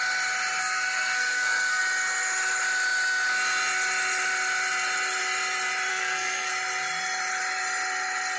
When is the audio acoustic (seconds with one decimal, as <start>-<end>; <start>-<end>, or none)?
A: 0.0-0.6; 1.8-5.9; 6.5-8.4